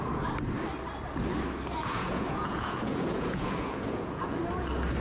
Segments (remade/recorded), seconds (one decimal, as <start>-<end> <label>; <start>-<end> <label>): 0.0-1.9 recorded; 1.9-4.4 remade; 4.4-5.0 recorded

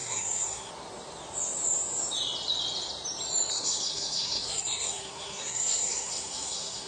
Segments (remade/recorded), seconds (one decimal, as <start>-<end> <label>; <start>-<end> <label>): 0.0-0.7 remade; 0.7-3.5 recorded; 3.5-6.9 remade

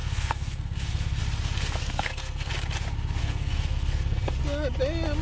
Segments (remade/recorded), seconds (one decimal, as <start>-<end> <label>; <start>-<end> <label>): 0.0-1.2 remade; 1.2-1.8 recorded; 1.8-2.5 remade; 2.5-3.2 recorded; 3.2-4.4 remade; 4.4-5.2 recorded

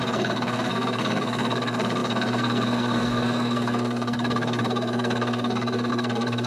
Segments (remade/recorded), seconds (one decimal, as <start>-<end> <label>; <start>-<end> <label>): 0.0-6.5 remade

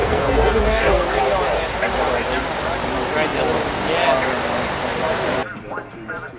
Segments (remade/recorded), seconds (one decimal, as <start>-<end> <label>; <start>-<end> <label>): 0.0-1.2 remade; 1.2-6.4 recorded

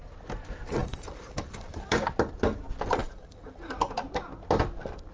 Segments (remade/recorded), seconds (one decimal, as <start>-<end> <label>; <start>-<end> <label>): 0.0-0.8 recorded; 0.8-1.9 remade; 1.9-3.0 recorded; 3.0-3.7 remade; 3.7-5.1 recorded

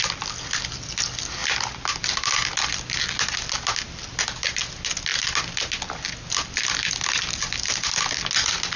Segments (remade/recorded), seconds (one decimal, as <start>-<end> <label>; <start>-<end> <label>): 0.0-8.8 recorded